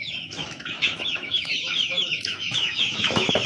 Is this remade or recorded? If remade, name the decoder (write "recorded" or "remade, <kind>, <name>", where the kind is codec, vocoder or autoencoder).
remade, autoencoder, DAC-VAE